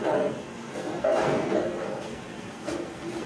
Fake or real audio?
fake